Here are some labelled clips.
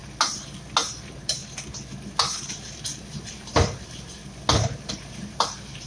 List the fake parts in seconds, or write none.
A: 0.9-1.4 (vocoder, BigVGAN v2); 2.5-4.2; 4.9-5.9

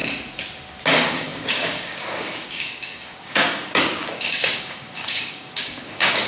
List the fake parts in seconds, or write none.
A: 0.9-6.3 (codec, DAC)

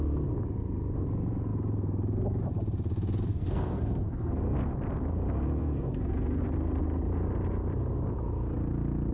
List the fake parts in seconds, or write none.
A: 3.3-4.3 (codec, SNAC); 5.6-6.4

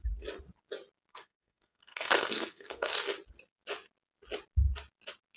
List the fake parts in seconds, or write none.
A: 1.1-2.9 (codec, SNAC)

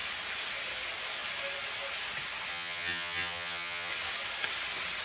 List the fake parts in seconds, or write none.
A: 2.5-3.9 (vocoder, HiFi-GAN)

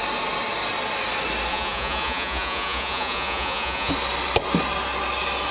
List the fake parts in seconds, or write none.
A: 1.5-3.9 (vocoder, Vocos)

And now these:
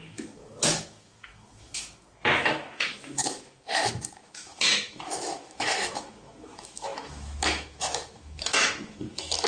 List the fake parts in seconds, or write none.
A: 0.0-9.5 (autoencoder, DAC-VAE)